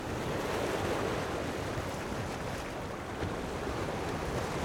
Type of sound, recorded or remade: recorded